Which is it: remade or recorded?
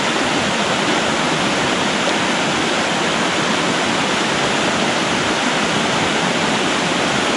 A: recorded